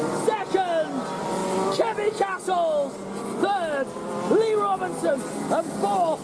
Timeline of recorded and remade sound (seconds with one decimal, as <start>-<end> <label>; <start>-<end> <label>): 0.0-6.2 recorded